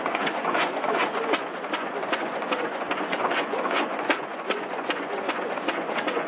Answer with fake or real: fake